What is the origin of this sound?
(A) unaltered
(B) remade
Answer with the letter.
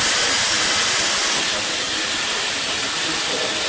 A